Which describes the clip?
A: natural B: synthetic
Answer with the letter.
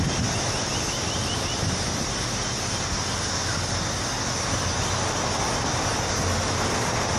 A